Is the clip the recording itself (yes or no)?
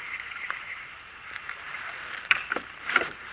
no